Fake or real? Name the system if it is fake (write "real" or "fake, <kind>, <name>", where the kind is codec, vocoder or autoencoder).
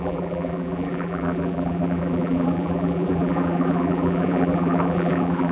fake, vocoder, BigVGAN v2